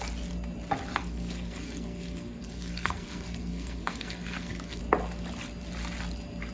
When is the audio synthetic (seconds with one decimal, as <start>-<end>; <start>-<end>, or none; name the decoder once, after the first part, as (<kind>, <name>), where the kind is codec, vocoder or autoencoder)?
0.9-4.8 (codec, SNAC)